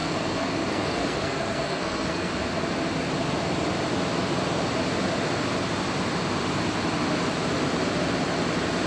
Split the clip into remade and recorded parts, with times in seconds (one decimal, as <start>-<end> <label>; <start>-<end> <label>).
0.0-2.3 remade; 2.3-8.9 recorded